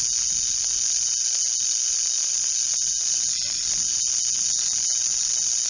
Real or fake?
real